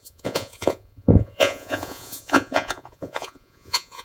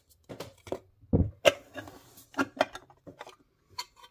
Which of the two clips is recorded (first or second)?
second